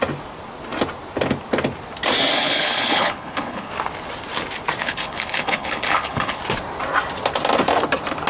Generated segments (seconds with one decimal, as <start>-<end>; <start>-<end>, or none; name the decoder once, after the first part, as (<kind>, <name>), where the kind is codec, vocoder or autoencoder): 2.3-3.7 (codec, HILCodec); 4.8-6.4